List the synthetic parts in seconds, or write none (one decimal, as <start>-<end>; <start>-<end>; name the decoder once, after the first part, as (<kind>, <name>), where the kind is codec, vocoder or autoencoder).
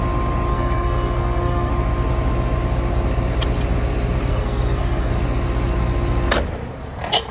0.5-1.7 (codec, SNAC); 4.3-5.1